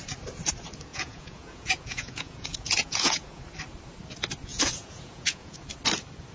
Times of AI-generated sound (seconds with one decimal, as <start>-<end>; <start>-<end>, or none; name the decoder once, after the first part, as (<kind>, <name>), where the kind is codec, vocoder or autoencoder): 0.9-3.4 (vocoder, Vocos); 4.5-5.6